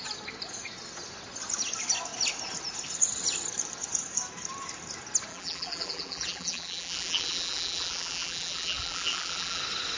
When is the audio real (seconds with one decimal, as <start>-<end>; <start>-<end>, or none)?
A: 0.0-5.3; 9.6-10.0